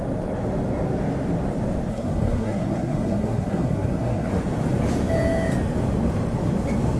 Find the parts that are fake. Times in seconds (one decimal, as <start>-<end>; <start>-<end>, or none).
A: 1.9-4.3